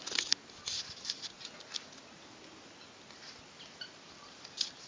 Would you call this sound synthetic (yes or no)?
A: no